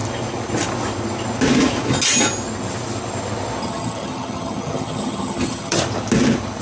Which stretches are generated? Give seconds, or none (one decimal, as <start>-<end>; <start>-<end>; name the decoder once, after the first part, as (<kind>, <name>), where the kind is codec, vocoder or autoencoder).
3.6-5.8 (vocoder, HiFi-GAN)